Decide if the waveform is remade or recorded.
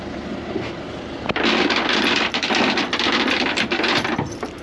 remade